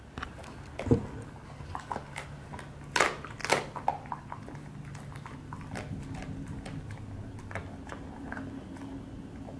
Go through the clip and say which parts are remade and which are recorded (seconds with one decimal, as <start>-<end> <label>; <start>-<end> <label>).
0.0-9.6 recorded